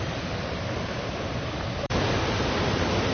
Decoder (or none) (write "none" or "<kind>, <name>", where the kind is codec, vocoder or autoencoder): vocoder, BigVGAN v2